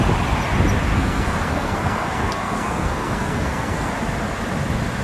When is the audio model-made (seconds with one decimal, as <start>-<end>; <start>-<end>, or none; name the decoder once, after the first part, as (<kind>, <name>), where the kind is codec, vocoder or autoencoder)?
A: 0.9-3.9 (codec, SNAC)